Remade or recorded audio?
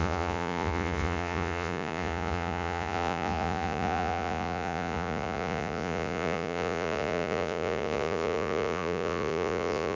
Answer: remade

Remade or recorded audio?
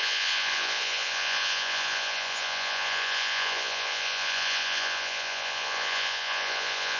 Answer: remade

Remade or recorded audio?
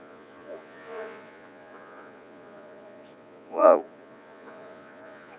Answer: remade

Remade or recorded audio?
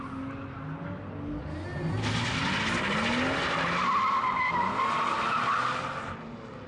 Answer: recorded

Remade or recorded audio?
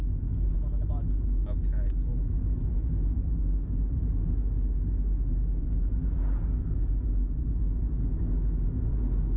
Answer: recorded